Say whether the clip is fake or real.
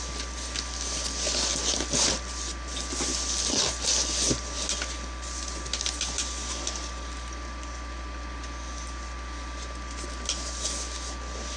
real